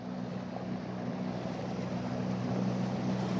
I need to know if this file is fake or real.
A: real